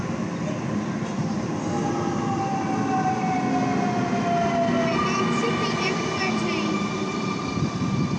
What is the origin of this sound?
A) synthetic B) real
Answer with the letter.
B